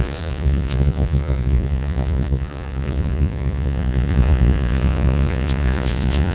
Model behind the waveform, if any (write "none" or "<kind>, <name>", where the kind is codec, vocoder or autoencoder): vocoder, Vocos